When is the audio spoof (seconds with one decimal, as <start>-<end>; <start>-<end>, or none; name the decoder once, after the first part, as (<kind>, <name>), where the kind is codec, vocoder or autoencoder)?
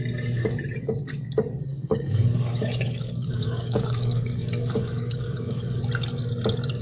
1.7-5.8 (codec, DAC)